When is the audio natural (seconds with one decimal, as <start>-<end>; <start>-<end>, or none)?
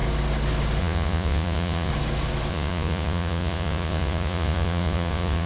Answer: 0.0-0.8; 1.9-2.5